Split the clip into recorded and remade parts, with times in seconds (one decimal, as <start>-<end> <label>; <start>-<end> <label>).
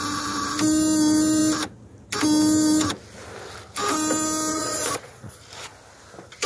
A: 0.0-4.5 recorded; 4.5-5.4 remade; 5.4-6.5 recorded